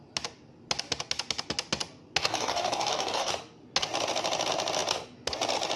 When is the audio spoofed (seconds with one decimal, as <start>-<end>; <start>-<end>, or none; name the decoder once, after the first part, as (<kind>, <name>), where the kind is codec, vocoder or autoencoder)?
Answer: 2.2-3.3 (codec, DAC)